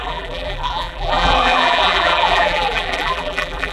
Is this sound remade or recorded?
remade